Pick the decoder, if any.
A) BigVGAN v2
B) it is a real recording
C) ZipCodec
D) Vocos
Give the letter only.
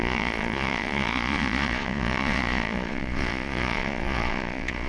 D